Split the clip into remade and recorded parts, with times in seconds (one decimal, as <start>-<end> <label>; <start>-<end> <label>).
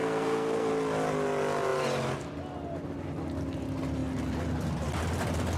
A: 0.0-0.7 remade; 0.7-5.6 recorded